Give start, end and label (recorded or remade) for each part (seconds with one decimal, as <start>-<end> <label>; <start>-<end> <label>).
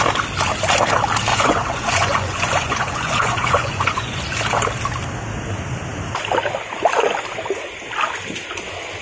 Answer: 0.0-1.3 recorded; 1.3-4.2 remade; 4.2-9.0 recorded